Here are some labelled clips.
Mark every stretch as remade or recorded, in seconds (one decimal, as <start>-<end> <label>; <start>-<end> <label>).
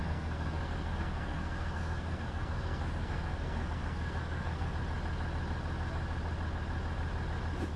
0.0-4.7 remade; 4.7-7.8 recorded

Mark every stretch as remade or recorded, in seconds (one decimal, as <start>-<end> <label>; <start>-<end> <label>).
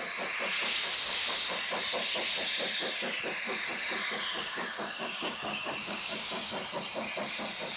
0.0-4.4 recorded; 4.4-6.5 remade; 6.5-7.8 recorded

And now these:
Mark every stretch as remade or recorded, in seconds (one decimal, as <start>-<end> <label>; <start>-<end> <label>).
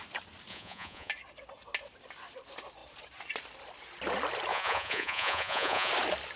0.0-0.5 recorded; 0.5-1.1 remade; 1.1-4.5 recorded; 4.5-5.9 remade; 5.9-6.4 recorded